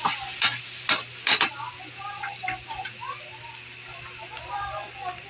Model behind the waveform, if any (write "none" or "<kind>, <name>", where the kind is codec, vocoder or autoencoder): none